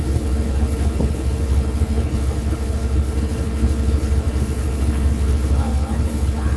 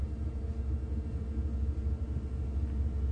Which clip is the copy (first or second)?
first